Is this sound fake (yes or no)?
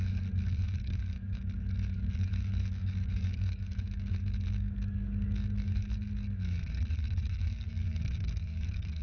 yes